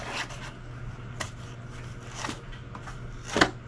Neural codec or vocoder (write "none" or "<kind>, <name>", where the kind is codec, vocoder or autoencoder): none